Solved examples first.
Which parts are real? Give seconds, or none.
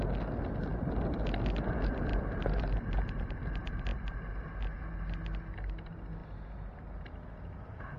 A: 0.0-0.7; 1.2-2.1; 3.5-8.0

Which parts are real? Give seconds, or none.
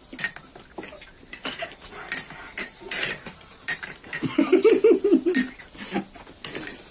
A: 0.0-3.2; 4.7-6.9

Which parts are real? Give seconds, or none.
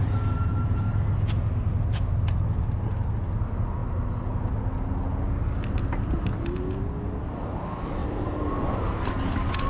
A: 0.0-8.0; 9.1-9.7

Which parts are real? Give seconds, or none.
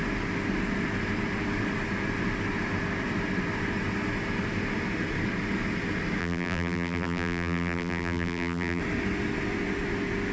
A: 0.0-6.2; 8.8-10.3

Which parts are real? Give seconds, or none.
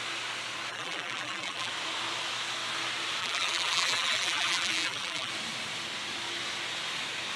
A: 0.0-0.7; 1.7-3.2; 5.3-7.4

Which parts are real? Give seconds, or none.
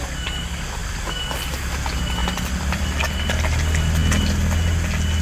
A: 0.0-0.8; 1.5-2.2; 3.0-5.2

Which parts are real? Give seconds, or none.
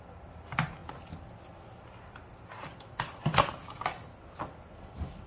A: 0.0-5.3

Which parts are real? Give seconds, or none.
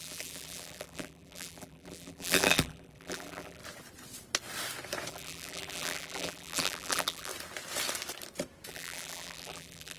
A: 3.6-5.1; 7.3-8.7